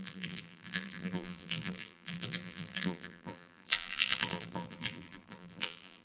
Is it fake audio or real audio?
fake